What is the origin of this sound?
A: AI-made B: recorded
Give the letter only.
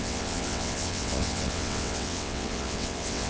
A